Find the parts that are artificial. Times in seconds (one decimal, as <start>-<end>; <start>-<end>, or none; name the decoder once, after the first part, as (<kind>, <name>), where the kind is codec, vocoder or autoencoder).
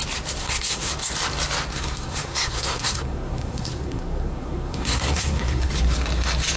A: 0.4-0.9 (codec, SNAC); 1.7-5.7